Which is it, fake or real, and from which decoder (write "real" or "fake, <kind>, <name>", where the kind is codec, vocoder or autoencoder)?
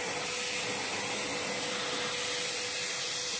real